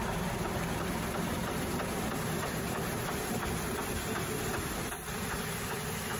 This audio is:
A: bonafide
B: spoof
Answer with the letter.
A